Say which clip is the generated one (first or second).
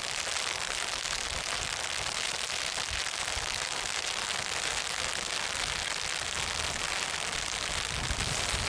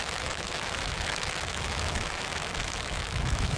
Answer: second